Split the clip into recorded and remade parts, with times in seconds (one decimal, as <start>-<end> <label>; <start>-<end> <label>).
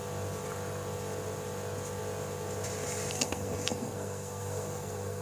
0.0-3.1 recorded; 3.1-5.2 remade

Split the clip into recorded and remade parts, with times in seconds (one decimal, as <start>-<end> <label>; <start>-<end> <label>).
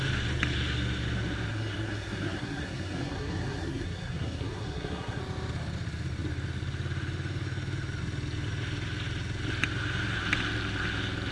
0.0-1.5 recorded; 1.5-5.2 remade; 5.2-11.3 recorded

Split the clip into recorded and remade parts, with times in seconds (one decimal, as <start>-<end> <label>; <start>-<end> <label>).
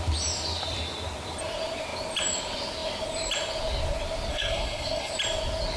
0.0-4.3 recorded; 4.3-5.1 remade; 5.1-5.8 recorded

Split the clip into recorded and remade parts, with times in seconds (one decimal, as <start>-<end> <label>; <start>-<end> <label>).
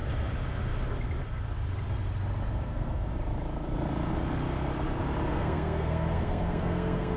0.0-2.5 recorded; 2.5-3.1 remade; 3.1-5.3 recorded; 5.3-7.2 remade